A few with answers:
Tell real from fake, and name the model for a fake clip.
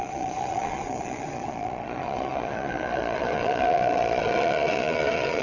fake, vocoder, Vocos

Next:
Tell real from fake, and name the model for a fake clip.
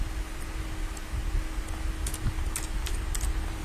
real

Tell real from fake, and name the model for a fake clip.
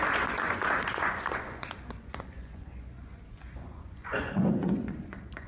fake, vocoder, Vocos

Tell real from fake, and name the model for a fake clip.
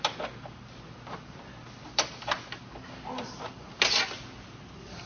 real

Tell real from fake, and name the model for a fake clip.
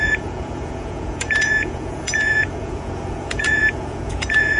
fake, vocoder, Vocos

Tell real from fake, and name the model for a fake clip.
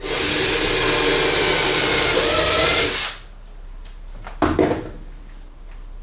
real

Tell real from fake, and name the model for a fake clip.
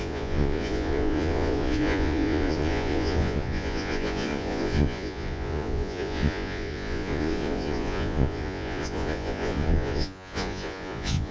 fake, vocoder, Vocos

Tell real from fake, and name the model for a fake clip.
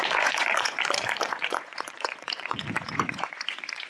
fake, vocoder, Vocos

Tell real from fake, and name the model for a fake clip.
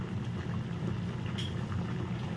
real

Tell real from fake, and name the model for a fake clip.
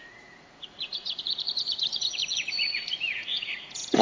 fake, vocoder, Vocos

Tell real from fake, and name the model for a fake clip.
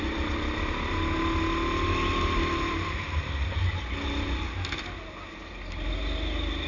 real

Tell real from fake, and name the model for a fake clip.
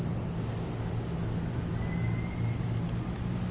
real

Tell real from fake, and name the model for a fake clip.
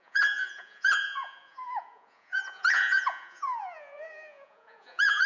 fake, vocoder, Vocos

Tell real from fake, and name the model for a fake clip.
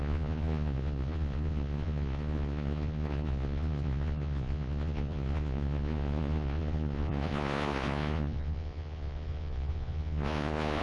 fake, vocoder, Vocos